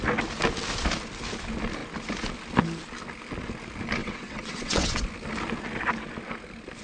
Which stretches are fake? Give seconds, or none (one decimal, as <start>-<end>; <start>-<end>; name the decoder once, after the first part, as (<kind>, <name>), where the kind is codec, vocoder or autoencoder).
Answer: 4.0-5.0 (vocoder, WaveNeXt)